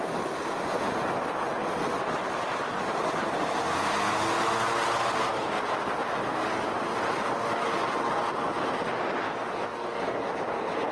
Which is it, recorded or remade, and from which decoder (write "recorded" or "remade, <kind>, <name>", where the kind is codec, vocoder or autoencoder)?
recorded